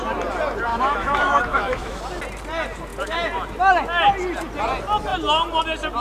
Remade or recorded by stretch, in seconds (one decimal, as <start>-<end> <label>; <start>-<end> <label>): 0.0-0.7 recorded; 0.7-2.0 remade; 2.0-6.0 recorded